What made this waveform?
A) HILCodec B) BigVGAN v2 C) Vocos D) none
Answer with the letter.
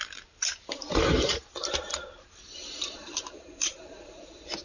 B